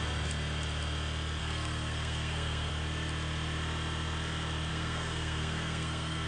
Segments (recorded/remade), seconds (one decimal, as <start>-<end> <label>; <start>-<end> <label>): 0.0-1.4 recorded; 1.4-2.7 remade; 2.7-4.7 recorded; 4.7-6.3 remade